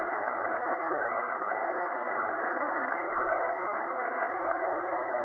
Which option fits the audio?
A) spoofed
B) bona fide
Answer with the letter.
A